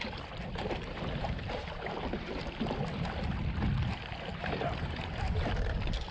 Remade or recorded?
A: recorded